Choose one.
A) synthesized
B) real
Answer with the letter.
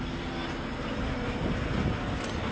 B